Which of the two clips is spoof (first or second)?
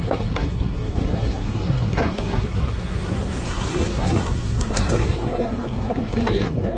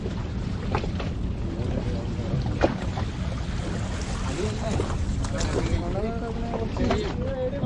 first